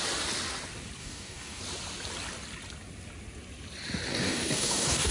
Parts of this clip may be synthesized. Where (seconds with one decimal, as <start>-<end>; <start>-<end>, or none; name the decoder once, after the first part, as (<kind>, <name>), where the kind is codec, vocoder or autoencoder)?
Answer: 1.0-1.6 (codec, DAC); 4.1-5.1